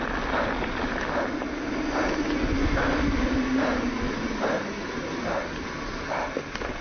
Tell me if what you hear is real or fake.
real